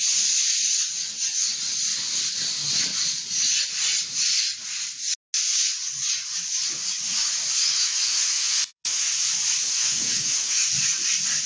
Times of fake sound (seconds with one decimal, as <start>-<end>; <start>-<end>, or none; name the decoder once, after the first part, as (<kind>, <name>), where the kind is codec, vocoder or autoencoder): 7.6-9.1 (autoencoder, DAC-VAE); 9.7-10.7